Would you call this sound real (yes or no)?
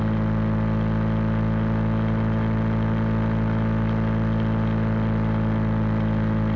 yes